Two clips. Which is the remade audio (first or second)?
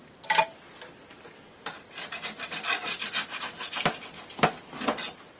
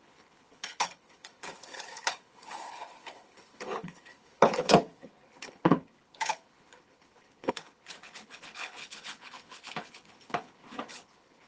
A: second